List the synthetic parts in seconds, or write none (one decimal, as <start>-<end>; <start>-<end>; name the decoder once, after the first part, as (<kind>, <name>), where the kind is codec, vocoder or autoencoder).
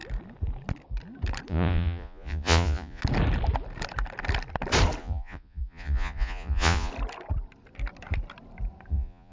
1.5-3.0 (vocoder, Vocos); 5.0-6.9; 8.9-9.3